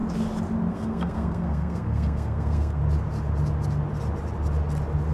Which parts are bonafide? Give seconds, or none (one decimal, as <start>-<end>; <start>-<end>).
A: 0.0-0.7; 2.8-5.1